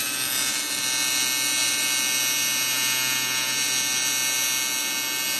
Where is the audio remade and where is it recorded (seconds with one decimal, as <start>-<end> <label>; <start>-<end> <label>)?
0.0-5.4 recorded